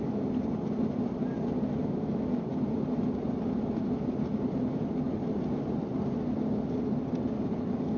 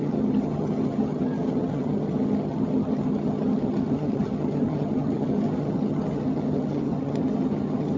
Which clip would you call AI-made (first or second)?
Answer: second